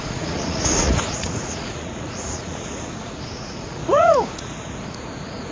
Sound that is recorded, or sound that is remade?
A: remade